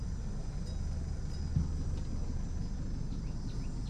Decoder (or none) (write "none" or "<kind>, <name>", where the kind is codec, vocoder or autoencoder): none